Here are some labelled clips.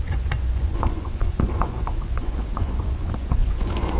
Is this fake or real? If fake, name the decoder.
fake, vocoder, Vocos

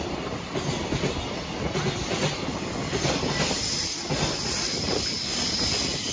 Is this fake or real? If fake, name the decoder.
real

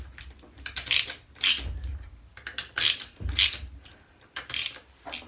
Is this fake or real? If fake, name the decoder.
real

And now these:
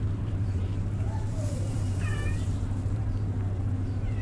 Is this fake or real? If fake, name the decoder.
fake, vocoder, BigVGAN v2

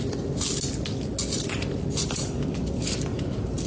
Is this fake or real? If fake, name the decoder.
real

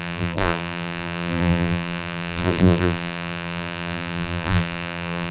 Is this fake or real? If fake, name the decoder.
fake, vocoder, BigVGAN v2